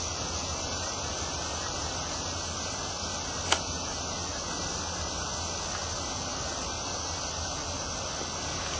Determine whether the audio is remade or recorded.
recorded